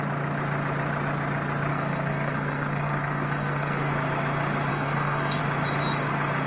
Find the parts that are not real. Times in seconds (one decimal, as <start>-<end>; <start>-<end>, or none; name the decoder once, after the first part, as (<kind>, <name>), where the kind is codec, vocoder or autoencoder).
1.7-3.9 (codec, SNAC); 4.7-5.4